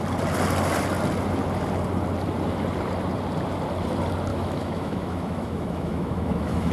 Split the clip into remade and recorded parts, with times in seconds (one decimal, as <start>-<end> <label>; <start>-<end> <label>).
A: 0.0-4.3 recorded; 4.3-6.7 remade